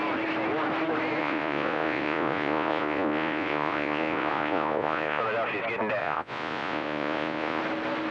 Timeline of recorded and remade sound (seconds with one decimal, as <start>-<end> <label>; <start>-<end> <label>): 0.0-1.2 recorded; 1.2-5.2 remade; 5.2-6.0 recorded; 6.0-7.6 remade; 7.6-8.1 recorded